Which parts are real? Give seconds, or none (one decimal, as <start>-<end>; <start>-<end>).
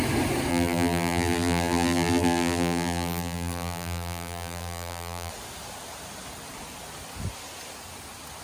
0.0-0.5; 5.3-8.4